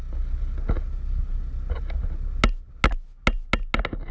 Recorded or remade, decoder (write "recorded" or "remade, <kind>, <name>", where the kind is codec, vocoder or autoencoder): recorded